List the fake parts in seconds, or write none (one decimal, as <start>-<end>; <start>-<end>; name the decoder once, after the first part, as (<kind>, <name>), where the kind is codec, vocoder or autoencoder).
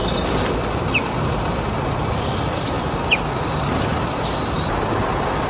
0.0-3.3 (vocoder, BigVGAN v2); 3.9-4.4